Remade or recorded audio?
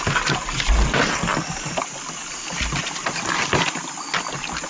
recorded